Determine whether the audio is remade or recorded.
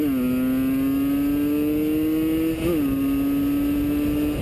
recorded